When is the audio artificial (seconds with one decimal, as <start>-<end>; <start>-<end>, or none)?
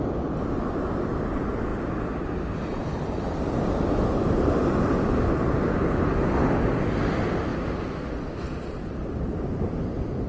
none